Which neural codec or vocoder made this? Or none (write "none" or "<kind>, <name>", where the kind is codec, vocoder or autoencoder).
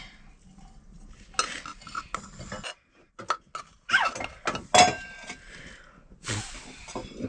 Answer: none